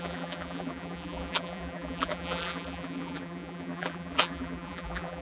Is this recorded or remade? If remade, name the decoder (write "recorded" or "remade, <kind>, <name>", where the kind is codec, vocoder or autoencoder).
remade, vocoder, BigVGAN v2